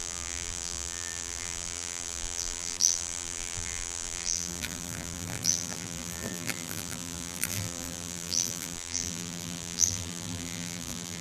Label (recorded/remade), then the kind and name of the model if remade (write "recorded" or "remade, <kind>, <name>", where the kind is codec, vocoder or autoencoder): remade, vocoder, BigVGAN v2